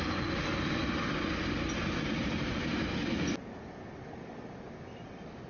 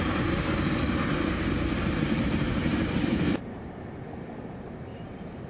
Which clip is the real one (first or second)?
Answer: first